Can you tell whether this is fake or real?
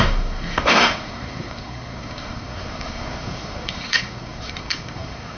fake